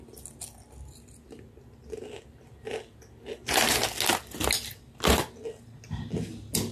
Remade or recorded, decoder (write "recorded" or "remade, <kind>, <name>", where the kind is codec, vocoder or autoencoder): recorded